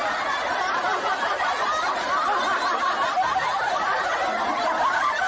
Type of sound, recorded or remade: recorded